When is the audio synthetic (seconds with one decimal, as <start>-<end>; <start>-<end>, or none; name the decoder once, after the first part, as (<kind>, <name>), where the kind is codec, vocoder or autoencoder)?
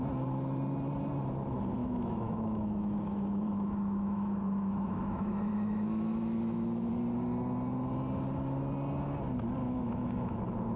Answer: 1.8-6.9 (autoencoder, DAC-VAE); 9.6-10.4